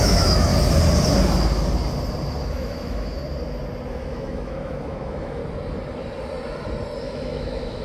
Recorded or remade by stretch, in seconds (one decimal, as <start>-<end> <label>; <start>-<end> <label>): 0.0-0.5 remade; 0.5-2.5 recorded; 2.5-3.2 remade; 3.2-3.9 recorded; 3.9-5.4 remade; 5.4-7.0 recorded; 7.0-7.8 remade